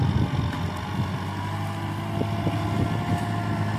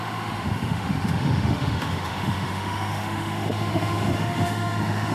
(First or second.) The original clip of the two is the first